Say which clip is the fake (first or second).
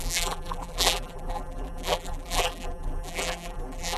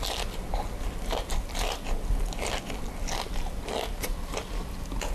first